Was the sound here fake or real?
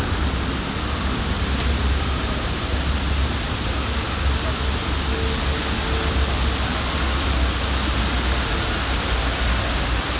real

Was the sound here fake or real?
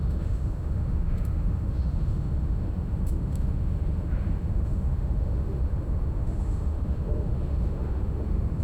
fake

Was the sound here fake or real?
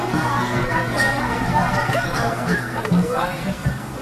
fake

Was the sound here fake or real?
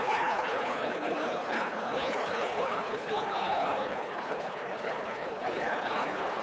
fake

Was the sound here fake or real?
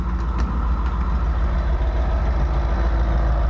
real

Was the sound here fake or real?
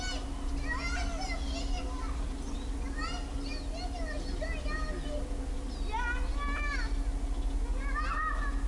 real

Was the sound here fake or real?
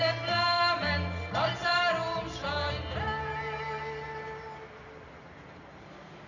real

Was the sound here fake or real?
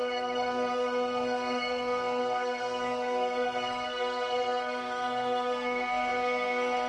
fake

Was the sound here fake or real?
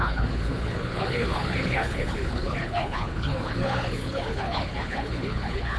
fake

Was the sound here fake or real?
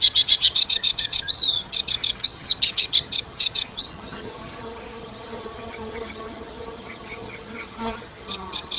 fake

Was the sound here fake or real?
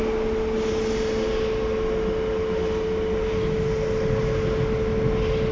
real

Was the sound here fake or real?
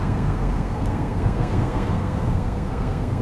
fake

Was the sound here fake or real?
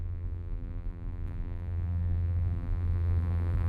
fake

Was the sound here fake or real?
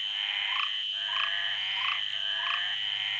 real